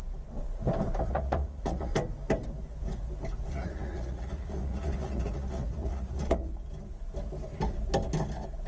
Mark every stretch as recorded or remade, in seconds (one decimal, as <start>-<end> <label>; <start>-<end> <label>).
0.0-1.1 recorded; 1.1-1.9 remade; 1.9-3.5 recorded; 3.5-6.5 remade; 6.5-8.7 recorded